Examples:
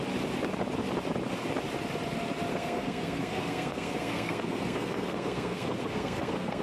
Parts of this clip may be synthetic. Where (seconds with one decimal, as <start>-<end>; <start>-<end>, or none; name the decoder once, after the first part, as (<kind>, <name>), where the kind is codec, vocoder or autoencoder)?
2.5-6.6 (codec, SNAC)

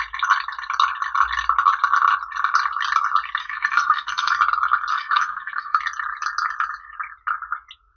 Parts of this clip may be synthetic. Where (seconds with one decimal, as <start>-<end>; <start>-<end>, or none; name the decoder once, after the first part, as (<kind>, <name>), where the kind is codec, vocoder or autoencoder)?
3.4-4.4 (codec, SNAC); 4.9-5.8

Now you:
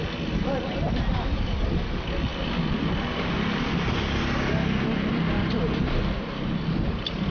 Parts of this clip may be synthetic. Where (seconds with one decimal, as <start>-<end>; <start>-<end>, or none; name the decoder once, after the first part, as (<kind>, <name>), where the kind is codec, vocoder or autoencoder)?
none

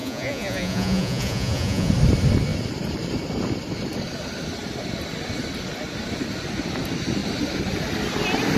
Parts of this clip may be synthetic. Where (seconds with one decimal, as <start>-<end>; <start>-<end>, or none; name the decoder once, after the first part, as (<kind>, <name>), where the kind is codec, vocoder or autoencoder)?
0.0-1.9 (vocoder, Vocos)

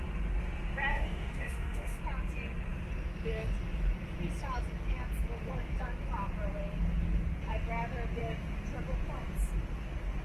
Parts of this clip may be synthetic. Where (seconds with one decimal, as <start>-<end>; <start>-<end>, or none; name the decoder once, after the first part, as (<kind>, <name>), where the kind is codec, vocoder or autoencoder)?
0.9-2.0 (autoencoder, DAC-VAE)

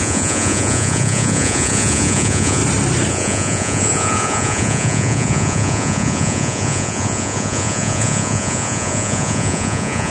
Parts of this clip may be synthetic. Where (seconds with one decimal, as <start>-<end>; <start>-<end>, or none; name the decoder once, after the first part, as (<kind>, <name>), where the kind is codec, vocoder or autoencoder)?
0.0-2.6 (vocoder, Vocos); 3.1-10.1